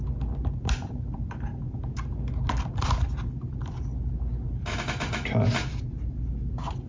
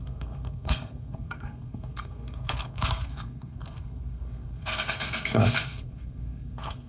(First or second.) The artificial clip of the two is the second